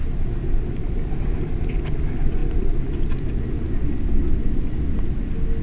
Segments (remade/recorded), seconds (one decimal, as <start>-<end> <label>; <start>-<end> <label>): 0.0-5.6 recorded